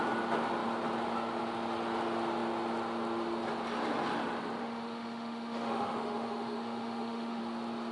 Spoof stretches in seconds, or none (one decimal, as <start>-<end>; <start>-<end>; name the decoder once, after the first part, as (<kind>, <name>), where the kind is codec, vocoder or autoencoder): 4.6-7.4 (autoencoder, DAC-VAE)